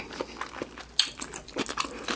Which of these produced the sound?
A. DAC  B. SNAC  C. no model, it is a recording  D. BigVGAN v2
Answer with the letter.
C